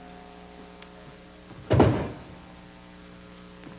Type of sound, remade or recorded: recorded